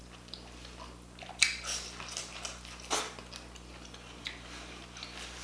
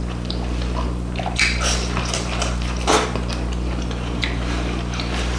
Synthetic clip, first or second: second